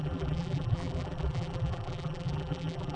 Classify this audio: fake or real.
fake